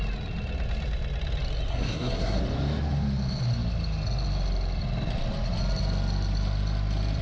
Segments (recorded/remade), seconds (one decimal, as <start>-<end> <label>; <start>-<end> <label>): 0.0-1.7 recorded; 1.7-2.4 remade; 2.4-7.2 recorded